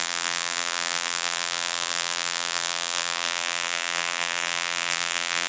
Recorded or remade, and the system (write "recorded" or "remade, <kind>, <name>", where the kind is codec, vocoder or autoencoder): remade, vocoder, BigVGAN v2